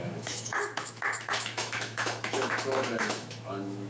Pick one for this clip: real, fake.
fake